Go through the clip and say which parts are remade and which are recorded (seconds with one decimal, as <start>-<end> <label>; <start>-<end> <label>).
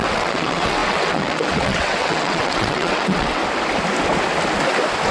0.0-3.4 remade; 3.4-5.1 recorded